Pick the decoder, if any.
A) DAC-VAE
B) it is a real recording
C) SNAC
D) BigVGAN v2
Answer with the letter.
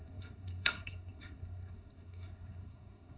C